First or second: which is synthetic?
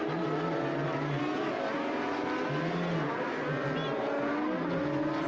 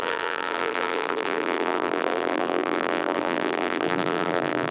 second